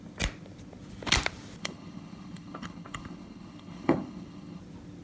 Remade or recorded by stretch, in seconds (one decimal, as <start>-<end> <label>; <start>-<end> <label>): 0.0-1.6 recorded; 1.6-4.6 remade; 4.6-5.0 recorded